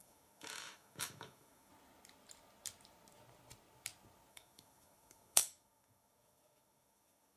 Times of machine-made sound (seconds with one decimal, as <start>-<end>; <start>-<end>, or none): 0.0-1.7; 4.3-7.4